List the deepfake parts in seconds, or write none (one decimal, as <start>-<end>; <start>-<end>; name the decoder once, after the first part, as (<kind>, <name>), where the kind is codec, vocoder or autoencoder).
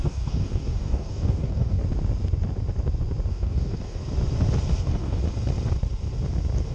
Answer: 0.0-1.8 (codec, DAC); 3.3-4.0; 4.8-5.2